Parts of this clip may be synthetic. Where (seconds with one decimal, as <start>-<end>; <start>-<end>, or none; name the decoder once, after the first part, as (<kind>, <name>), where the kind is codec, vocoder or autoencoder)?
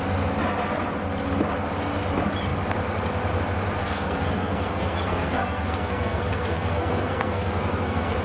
3.8-8.2 (codec, SNAC)